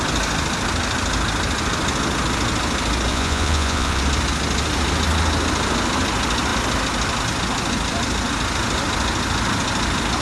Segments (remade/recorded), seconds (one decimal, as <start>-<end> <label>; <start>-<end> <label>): 0.0-3.1 recorded; 3.1-4.0 remade; 4.0-10.2 recorded